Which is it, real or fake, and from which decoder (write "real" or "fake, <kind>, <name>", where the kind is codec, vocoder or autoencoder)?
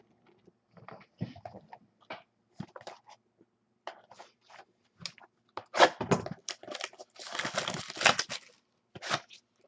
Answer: real